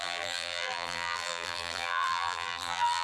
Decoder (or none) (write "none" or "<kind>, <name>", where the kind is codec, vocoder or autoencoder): vocoder, BigVGAN v2